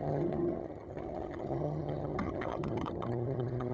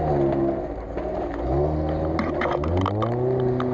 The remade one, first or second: first